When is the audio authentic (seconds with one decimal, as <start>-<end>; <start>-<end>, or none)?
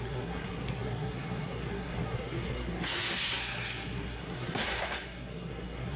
none